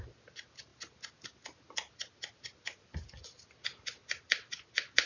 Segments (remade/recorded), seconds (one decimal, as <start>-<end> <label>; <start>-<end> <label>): 0.0-5.1 recorded